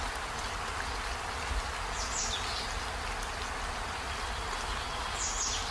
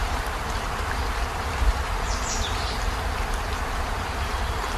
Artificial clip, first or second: second